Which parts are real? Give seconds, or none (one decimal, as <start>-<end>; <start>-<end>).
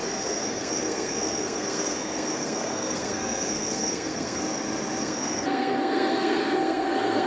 4.4-5.0